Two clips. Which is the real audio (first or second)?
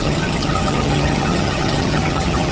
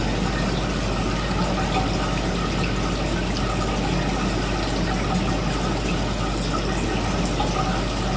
second